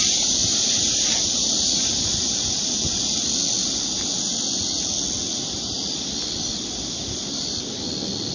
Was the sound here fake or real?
real